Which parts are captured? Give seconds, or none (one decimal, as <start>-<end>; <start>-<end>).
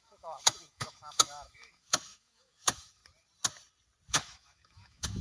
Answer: 3.0-4.1